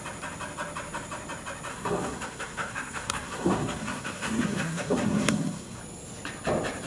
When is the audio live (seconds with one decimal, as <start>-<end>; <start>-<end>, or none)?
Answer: 0.0-1.7; 5.8-6.9